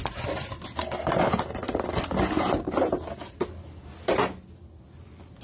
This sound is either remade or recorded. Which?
recorded